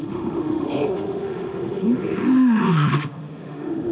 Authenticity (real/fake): fake